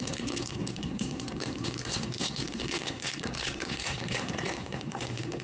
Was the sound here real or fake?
fake